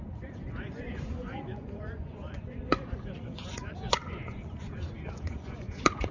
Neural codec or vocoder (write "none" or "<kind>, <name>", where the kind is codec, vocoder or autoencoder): vocoder, Vocos